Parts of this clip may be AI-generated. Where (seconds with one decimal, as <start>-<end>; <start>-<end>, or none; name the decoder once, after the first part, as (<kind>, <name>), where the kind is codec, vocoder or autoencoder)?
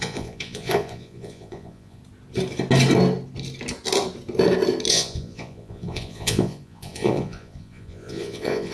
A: 0.0-2.0 (vocoder, Vocos); 4.9-8.7